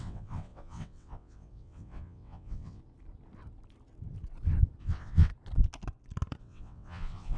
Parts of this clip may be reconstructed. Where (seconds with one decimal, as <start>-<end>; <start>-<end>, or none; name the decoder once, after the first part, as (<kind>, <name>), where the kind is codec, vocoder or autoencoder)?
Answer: 0.0-2.8 (vocoder, WaveNeXt); 4.8-5.3; 6.4-7.4